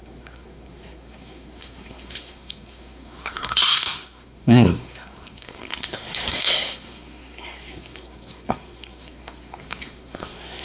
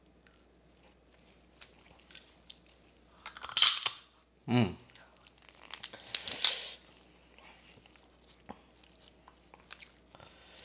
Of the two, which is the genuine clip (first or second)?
second